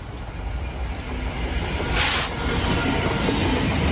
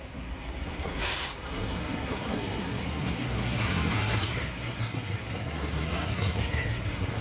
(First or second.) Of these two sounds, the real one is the first